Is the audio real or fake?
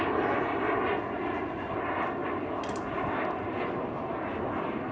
real